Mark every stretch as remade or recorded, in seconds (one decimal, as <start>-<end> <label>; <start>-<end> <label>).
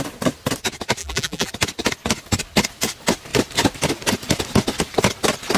0.0-1.0 recorded; 1.0-1.5 remade; 1.5-5.6 recorded